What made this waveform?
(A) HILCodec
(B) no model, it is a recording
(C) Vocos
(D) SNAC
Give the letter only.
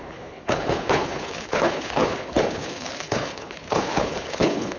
A